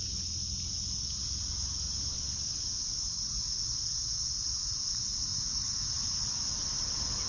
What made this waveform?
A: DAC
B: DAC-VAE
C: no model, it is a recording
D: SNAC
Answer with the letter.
C